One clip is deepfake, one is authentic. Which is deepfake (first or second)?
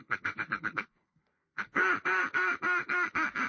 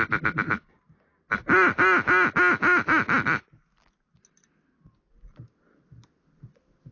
first